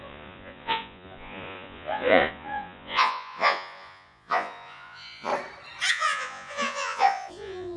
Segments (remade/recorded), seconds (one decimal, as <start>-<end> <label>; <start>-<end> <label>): 0.0-5.3 remade; 5.3-5.9 recorded; 5.9-7.8 remade